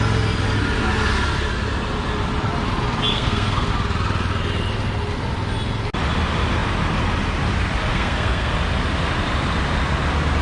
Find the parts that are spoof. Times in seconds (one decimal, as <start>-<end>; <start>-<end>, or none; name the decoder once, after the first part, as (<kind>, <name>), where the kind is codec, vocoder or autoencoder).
3.1-3.7 (codec, SNAC); 7.9-8.5